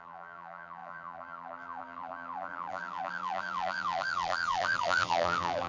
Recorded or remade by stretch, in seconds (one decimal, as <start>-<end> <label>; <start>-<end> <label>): 0.0-5.7 remade